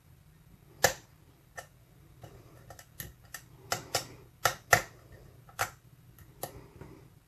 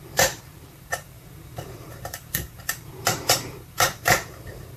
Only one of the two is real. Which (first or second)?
first